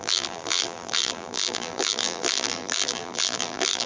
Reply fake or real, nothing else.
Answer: fake